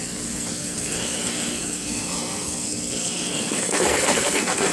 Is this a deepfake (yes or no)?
yes